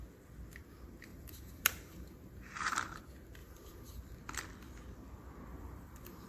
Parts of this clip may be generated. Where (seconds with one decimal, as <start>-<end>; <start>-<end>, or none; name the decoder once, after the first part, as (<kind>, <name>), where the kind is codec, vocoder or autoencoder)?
1.1-3.0 (vocoder, BigVGAN v2); 3.4-4.1; 5.5-6.3